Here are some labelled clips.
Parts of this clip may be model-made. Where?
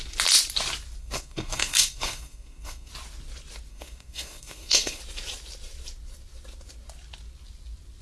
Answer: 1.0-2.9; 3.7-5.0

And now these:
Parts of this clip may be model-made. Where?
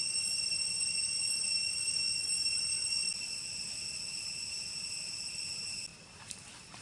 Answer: none